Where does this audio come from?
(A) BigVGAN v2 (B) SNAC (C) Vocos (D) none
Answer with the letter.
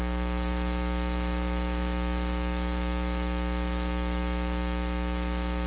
A